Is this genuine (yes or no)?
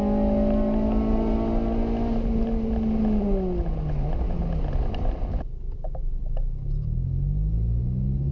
yes